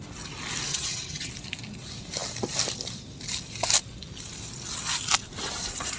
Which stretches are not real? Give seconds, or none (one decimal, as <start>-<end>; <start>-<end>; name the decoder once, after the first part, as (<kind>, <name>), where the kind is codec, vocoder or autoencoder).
0.7-1.3 (vocoder, HiFi-GAN)